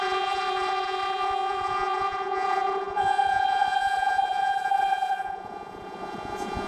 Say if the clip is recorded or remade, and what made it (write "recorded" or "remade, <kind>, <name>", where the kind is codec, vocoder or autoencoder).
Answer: remade, vocoder, Vocos